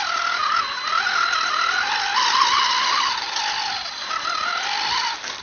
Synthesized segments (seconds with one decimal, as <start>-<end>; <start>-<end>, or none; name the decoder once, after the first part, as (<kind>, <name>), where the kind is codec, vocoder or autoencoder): none

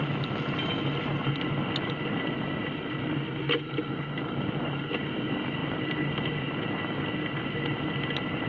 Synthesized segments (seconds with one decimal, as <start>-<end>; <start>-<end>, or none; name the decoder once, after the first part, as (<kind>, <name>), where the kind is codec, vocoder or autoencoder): none

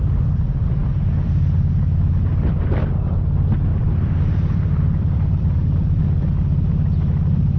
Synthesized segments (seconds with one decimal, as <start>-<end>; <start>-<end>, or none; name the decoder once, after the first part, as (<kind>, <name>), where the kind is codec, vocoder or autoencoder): 3.7-6.0 (vocoder, BigVGAN v2)